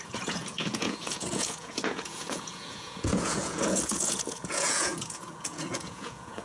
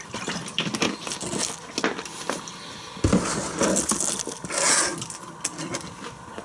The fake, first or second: first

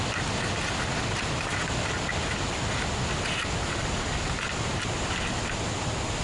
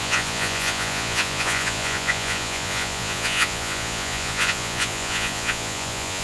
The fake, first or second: second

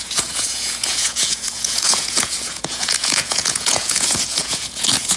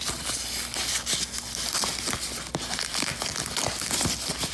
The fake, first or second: first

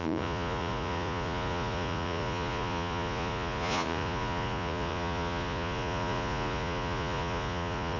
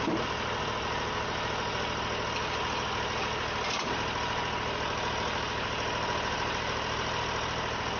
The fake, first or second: first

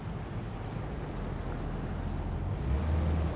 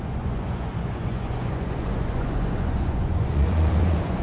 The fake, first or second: second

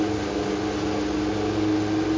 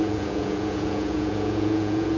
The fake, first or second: second